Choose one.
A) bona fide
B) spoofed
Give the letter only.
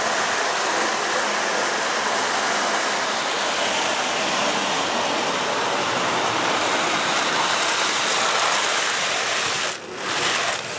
B